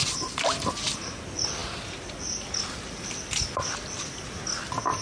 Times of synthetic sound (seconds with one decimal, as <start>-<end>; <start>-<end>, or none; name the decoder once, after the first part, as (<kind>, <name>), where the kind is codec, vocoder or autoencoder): 0.0-0.7 (vocoder, BigVGAN v2)